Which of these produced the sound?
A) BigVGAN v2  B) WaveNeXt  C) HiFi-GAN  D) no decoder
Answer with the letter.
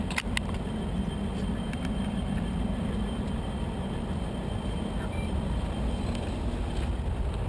D